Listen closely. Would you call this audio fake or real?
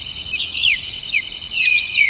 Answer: fake